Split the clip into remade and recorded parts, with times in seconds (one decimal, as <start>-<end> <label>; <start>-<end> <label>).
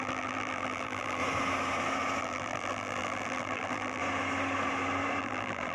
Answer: 0.0-1.2 remade; 1.2-2.2 recorded; 2.2-4.0 remade; 4.0-5.2 recorded; 5.2-5.7 remade